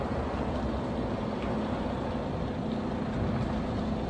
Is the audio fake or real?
real